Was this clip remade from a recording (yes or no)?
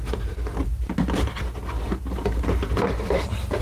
no